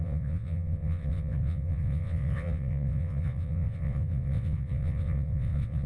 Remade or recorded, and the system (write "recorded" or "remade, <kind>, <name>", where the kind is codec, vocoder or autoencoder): remade, vocoder, WaveNeXt